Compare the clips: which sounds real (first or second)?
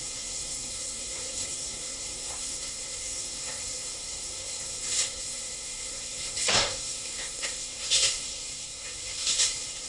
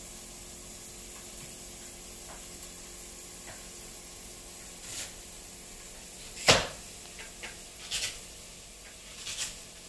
second